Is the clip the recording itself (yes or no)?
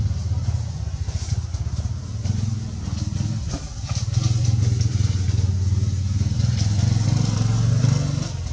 yes